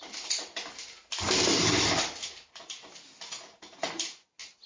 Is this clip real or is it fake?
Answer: real